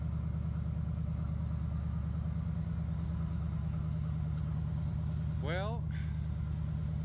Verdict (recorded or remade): recorded